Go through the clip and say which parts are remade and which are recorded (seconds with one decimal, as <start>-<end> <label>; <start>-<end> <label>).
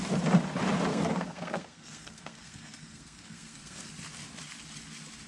0.0-0.9 recorded; 0.9-3.9 remade; 3.9-5.3 recorded